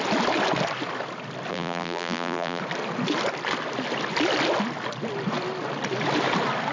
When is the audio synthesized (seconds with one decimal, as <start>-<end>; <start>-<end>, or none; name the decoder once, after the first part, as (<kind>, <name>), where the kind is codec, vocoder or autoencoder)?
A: 1.5-2.6 (vocoder, BigVGAN v2)